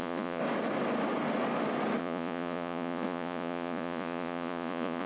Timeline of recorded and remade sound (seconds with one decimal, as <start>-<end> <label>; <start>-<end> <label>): 0.0-0.4 remade; 0.4-2.0 recorded; 2.0-5.1 remade